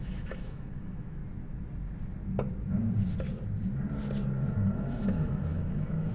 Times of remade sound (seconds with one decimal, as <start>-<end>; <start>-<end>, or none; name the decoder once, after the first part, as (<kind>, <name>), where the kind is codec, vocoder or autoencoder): 0.0-1.2 (autoencoder, DAC-VAE); 4.5-6.1